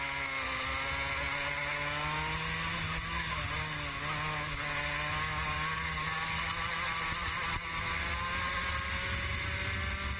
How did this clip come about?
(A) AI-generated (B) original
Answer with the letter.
B